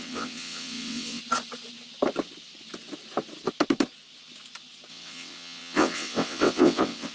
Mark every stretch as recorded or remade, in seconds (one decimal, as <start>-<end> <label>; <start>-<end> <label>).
0.0-1.2 remade; 1.2-4.9 recorded; 4.9-7.1 remade